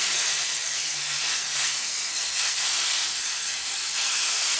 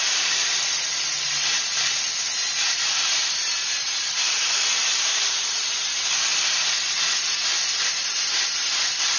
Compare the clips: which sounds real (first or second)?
second